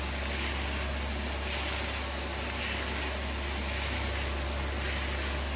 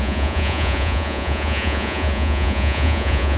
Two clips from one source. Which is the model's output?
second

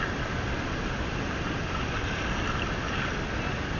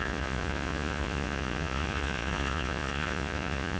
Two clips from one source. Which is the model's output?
second